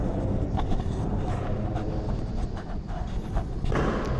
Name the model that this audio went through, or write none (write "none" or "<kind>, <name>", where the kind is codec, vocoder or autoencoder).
none